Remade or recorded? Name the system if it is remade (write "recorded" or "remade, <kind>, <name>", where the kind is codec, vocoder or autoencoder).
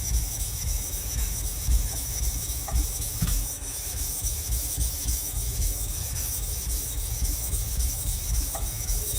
remade, autoencoder, DAC-VAE